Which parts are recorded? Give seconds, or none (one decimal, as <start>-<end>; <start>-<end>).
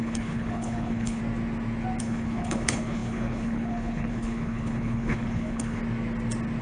1.2-2.0; 5.8-6.6